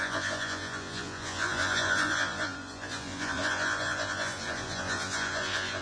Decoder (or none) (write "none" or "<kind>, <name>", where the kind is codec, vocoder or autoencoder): vocoder, Vocos